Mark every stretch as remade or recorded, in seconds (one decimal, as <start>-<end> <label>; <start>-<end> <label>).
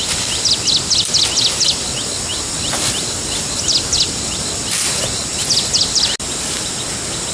0.0-7.3 recorded